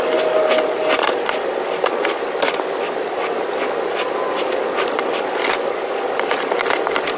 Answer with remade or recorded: recorded